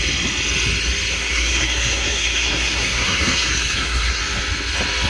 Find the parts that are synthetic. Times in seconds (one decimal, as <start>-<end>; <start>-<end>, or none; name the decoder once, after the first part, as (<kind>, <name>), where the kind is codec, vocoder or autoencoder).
1.1-4.2 (codec, SNAC)